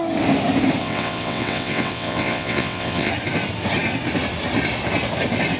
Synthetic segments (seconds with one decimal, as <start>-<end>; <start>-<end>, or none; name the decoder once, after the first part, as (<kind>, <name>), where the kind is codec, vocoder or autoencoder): 0.8-3.1 (vocoder, WaveNeXt)